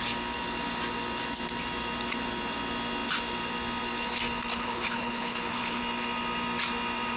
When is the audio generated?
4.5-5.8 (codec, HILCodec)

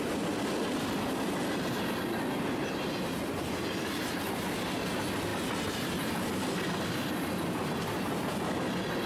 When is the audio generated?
none

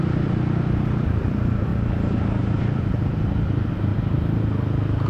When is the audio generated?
0.0-1.7 (vocoder, BigVGAN v2); 2.4-3.9

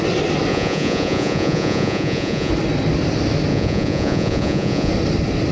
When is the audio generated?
0.5-2.5 (vocoder, Vocos); 3.5-4.9

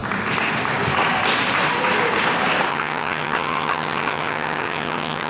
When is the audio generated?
2.7-5.3 (vocoder, HiFi-GAN)

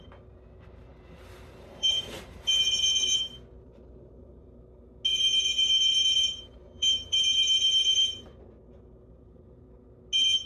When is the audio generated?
0.9-4.4 (vocoder, BigVGAN v2); 5.1-8.4